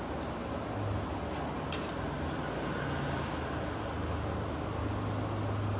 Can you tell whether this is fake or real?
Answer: real